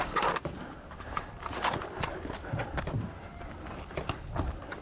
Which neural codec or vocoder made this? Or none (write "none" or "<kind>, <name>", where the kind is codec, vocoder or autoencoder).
none